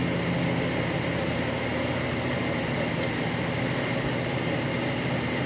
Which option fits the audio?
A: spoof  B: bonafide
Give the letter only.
B